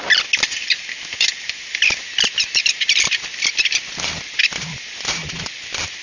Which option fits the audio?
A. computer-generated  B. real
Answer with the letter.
B